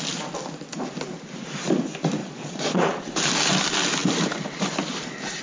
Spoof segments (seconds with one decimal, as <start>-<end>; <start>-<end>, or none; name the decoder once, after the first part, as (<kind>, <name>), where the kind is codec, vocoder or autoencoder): 2.2-3.0 (vocoder, Vocos)